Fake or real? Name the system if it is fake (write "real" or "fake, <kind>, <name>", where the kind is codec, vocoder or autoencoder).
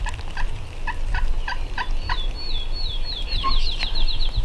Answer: real